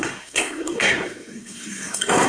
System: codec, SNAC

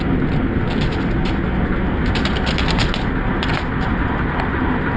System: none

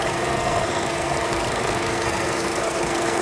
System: codec, SNAC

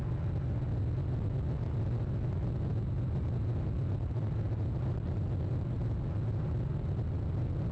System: none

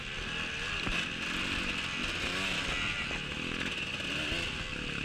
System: none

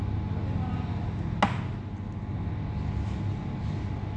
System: none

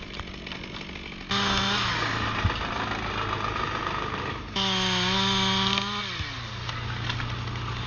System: none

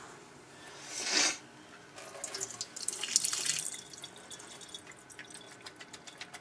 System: none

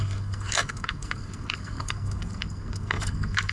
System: codec, SNAC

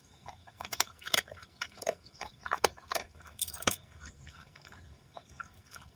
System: codec, SNAC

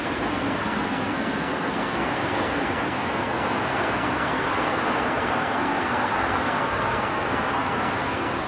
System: codec, SNAC